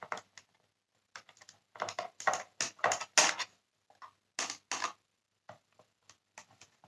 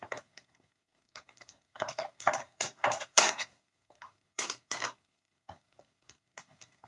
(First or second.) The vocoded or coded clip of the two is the second